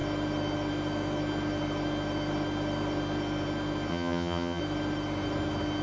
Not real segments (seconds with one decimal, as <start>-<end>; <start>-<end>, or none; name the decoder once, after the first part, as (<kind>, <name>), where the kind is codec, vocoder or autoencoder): 3.9-4.6 (vocoder, HiFi-GAN)